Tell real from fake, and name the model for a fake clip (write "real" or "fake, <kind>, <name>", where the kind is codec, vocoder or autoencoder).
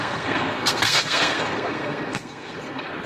fake, codec, SNAC